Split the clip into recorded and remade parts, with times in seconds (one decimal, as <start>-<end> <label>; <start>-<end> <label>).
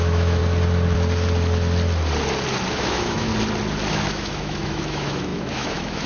0.0-0.4 remade; 0.4-2.7 recorded; 2.7-3.3 remade; 3.3-3.9 recorded; 3.9-6.1 remade